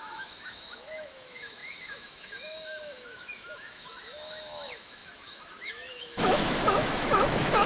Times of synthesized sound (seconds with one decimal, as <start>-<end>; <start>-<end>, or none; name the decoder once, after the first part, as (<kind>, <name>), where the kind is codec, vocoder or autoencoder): 0.0-7.7 (autoencoder, DAC-VAE)